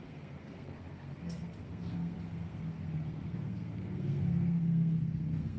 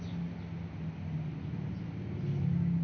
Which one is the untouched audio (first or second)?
second